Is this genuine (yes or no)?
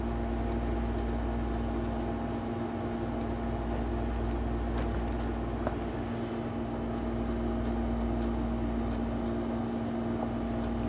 yes